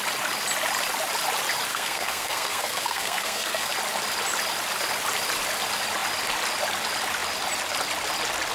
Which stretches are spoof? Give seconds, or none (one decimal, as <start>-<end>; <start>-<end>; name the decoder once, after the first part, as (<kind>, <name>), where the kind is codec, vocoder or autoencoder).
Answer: 1.7-3.7 (codec, SNAC)